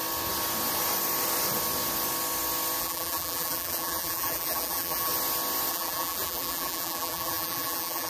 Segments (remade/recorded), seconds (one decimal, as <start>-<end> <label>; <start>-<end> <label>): 0.0-2.8 recorded; 2.8-5.1 remade; 5.1-5.7 recorded; 5.7-8.1 remade